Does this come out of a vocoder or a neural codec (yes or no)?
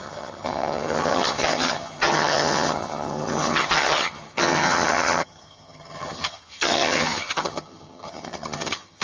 yes